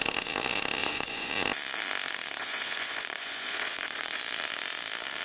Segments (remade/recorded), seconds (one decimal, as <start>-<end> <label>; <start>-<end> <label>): 0.0-0.8 recorded; 0.8-1.3 remade; 1.3-2.4 recorded; 2.4-4.2 remade; 4.2-5.2 recorded